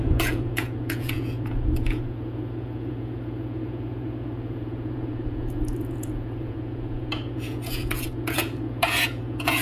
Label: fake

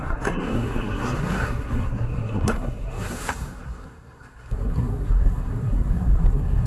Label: fake